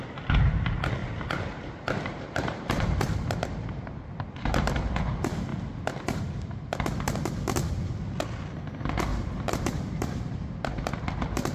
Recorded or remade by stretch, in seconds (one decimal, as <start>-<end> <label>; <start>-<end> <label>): 0.0-1.0 recorded; 1.0-4.9 remade; 4.9-9.1 recorded; 9.1-11.0 remade; 11.0-11.5 recorded